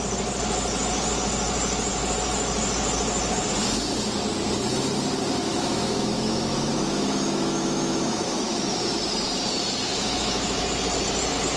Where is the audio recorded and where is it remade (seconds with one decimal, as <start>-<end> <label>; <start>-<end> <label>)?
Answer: 0.0-5.5 recorded; 5.5-8.9 remade; 8.9-9.9 recorded; 9.9-10.6 remade; 10.6-11.6 recorded